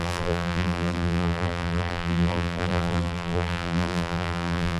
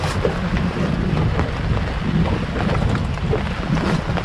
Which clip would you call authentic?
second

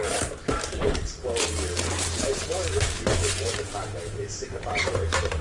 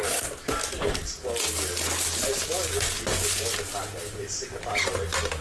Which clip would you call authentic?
second